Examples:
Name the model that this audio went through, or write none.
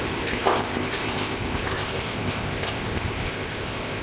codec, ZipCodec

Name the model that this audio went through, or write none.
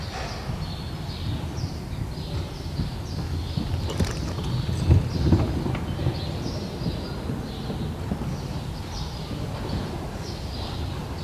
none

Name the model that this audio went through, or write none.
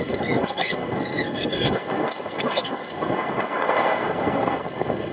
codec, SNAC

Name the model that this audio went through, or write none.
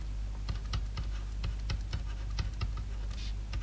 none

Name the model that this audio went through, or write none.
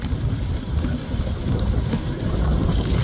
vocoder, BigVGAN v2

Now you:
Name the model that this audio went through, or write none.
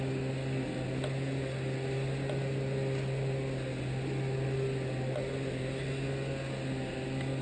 none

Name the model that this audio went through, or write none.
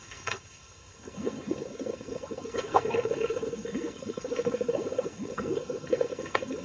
codec, SNAC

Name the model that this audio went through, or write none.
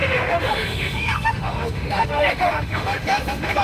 autoencoder, DAC-VAE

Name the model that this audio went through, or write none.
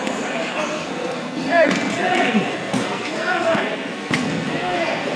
codec, SNAC